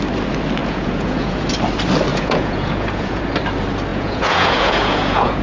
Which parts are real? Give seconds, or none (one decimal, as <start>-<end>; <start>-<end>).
0.0-0.6; 1.5-2.1; 3.2-3.9